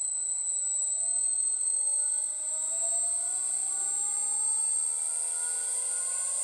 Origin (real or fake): real